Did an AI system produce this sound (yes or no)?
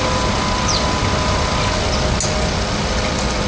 no